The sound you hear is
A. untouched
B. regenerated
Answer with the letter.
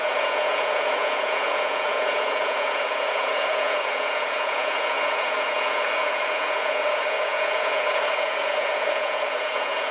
B